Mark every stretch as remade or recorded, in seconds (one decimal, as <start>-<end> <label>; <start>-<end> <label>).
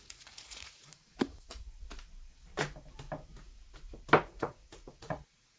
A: 0.0-0.9 remade; 0.9-4.3 recorded; 4.3-5.6 remade